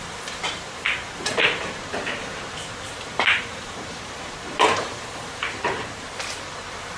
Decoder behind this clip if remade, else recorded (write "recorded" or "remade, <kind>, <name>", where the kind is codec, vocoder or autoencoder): remade, vocoder, BigVGAN v2